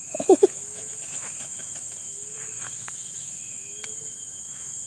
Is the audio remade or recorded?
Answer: remade